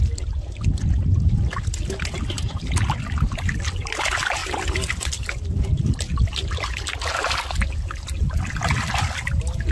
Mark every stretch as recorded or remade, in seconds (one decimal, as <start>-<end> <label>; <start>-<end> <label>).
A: 0.0-9.7 recorded